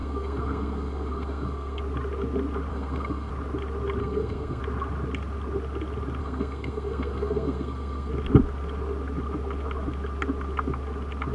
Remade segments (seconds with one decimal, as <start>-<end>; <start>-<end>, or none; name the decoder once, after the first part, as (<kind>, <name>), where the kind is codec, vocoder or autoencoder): 0.0-1.8 (codec, SNAC); 2.7-3.3; 4.0-4.6; 6.2-8.1